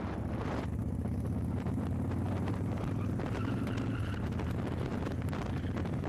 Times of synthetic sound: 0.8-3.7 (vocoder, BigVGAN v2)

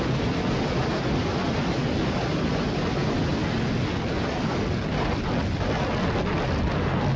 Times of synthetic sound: none